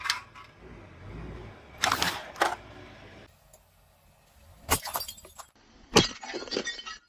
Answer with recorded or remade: recorded